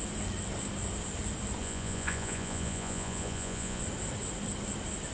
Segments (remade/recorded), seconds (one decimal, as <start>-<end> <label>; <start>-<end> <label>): 0.0-1.6 recorded; 1.6-3.8 remade; 3.8-5.1 recorded